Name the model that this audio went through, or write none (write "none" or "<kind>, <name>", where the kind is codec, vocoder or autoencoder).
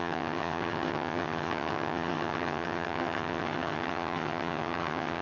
vocoder, HiFi-GAN